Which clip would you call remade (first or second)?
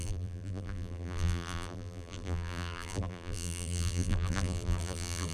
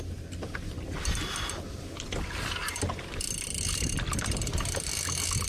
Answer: first